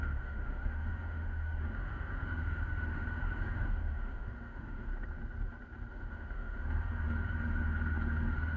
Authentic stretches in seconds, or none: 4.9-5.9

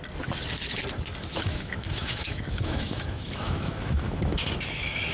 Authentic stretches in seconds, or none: 0.0-1.3; 4.4-5.1